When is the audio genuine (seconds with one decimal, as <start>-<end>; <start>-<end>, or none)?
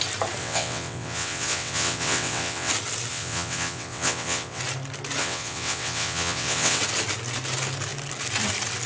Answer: 0.0-0.4; 2.7-3.1; 4.6-5.2; 6.8-8.9